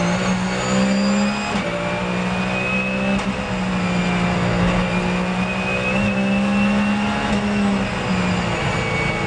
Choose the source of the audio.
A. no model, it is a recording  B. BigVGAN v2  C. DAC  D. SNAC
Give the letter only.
A